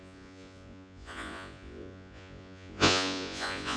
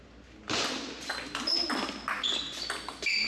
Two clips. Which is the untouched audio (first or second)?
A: second